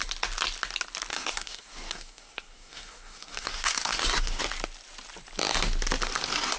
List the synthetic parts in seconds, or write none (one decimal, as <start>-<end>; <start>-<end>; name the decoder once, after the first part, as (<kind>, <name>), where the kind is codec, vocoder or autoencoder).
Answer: 1.1-4.4 (codec, SNAC)